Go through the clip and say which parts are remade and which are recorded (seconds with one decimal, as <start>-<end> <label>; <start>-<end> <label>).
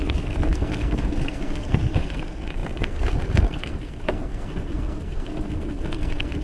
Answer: 0.0-6.4 remade